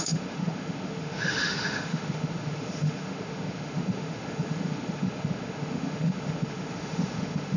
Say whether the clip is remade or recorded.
remade